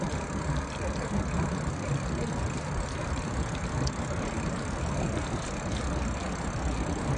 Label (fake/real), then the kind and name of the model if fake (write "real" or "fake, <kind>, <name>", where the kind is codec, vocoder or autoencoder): real